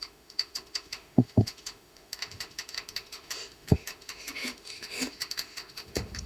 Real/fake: fake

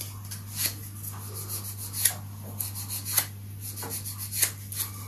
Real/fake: real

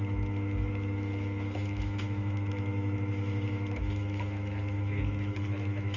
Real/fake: fake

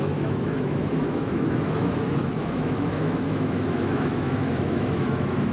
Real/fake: fake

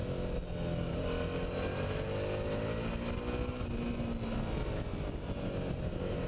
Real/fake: real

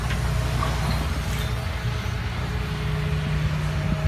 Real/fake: real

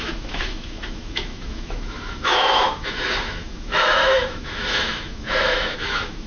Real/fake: fake